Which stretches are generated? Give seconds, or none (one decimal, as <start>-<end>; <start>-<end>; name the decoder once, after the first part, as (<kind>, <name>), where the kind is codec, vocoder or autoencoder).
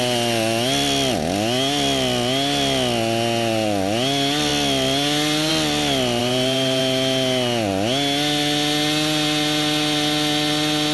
6.2-6.8 (vocoder, BigVGAN v2)